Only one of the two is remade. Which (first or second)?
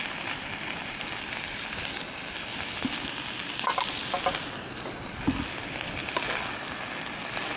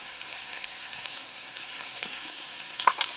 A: second